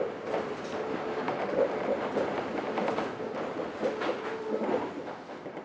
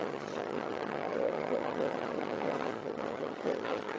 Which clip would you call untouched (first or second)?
first